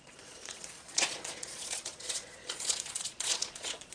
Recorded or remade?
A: remade